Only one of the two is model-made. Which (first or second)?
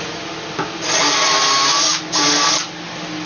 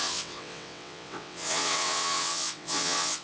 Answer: second